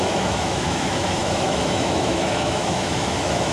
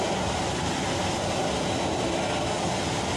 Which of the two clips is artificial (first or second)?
first